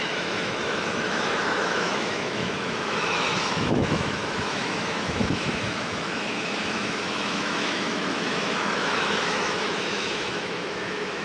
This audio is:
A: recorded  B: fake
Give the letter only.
B